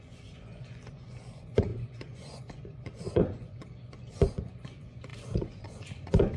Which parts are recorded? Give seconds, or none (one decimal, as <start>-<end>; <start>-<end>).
none